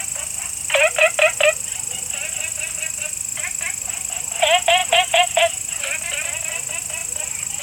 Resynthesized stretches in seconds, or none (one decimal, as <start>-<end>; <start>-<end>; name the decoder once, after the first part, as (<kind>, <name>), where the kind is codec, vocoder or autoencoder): 4.8-5.8 (vocoder, Vocos)